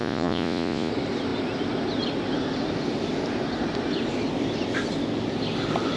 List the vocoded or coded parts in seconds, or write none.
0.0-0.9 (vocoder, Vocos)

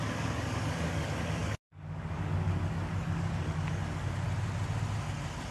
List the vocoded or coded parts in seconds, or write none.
0.0-3.8 (codec, DAC)

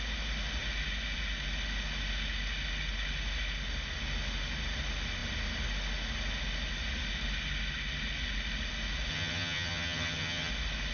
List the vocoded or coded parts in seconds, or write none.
9.1-10.5 (vocoder, HiFi-GAN)

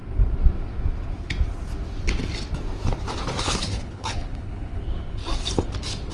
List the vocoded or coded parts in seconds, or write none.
3.4-5.2 (codec, HILCodec)

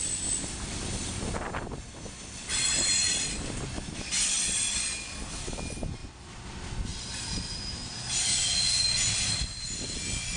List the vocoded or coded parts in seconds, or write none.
6.0-6.5 (vocoder, BigVGAN v2)

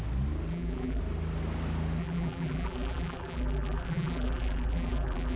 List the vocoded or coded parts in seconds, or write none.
0.5-1.0 (vocoder, BigVGAN v2); 2.0-5.4

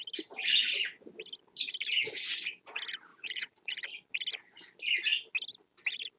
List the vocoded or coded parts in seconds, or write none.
3.1-3.7 (vocoder, Vocos)

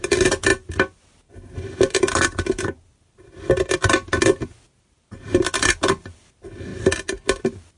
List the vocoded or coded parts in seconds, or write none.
none